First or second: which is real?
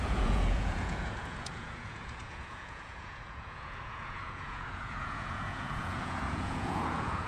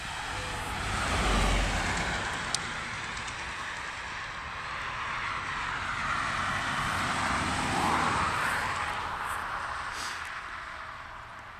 second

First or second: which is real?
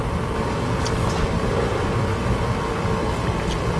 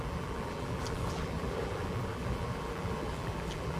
first